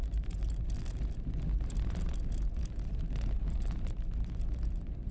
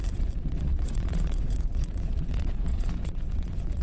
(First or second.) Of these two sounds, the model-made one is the second